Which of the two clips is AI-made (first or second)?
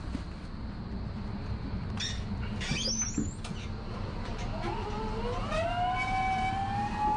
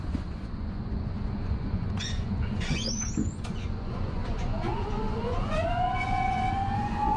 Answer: second